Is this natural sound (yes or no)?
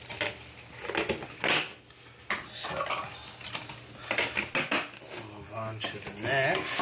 yes